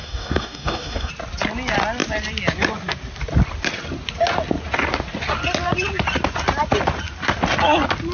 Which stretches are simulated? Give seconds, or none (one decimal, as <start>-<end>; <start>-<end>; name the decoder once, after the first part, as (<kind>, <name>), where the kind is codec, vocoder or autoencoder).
0.0-1.1 (codec, DAC)